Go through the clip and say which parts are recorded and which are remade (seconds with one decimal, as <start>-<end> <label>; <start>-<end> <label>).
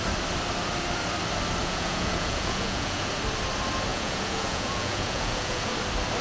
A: 0.0-1.6 recorded; 1.6-3.1 remade; 3.1-3.9 recorded; 3.9-5.7 remade; 5.7-6.2 recorded